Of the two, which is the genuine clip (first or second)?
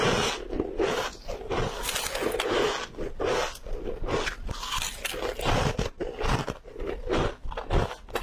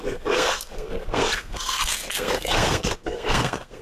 first